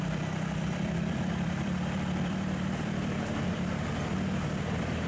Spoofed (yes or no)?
yes